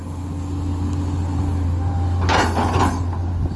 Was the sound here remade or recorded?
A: recorded